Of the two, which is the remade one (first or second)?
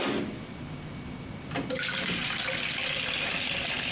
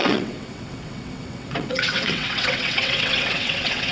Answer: second